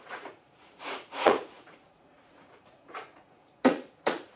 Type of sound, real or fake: fake